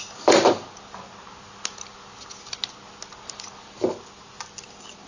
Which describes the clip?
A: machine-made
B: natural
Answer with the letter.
B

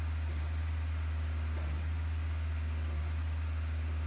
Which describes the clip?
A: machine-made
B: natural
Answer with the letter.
B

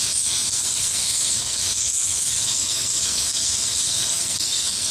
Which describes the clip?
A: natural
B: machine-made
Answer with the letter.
B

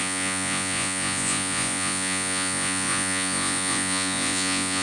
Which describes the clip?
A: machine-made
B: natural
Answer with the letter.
A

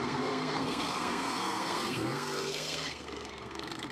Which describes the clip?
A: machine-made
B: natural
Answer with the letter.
A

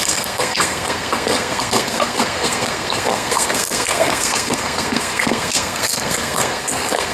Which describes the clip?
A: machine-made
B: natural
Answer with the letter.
A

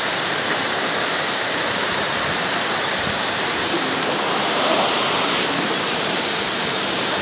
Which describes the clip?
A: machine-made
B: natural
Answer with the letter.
A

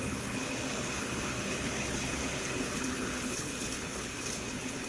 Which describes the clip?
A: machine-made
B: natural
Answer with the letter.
A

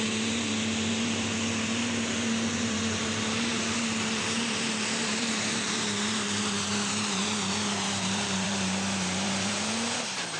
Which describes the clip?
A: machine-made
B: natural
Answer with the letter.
A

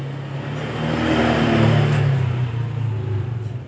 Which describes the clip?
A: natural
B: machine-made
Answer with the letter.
A